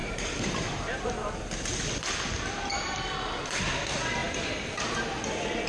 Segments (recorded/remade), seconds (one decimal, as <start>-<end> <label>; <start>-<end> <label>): 0.0-1.4 remade; 1.4-4.2 recorded; 4.2-4.7 remade; 4.7-5.7 recorded